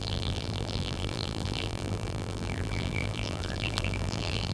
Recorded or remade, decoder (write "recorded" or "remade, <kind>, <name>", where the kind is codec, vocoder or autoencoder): remade, vocoder, BigVGAN v2